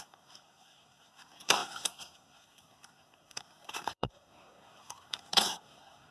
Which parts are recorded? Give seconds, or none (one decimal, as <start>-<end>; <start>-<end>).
none